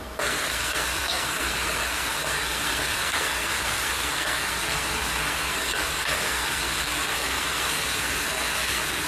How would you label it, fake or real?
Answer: fake